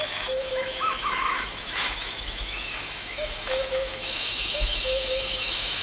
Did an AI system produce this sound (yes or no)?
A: yes